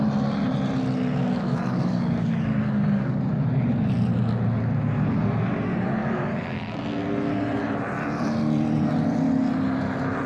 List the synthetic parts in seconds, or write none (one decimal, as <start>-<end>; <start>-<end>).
1.2-3.2; 6.0-6.8